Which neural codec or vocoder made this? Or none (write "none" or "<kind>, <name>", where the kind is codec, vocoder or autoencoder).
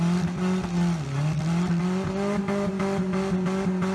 none